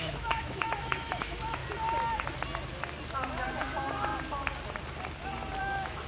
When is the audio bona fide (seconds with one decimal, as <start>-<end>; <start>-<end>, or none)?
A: 1.6-3.6; 4.1-5.6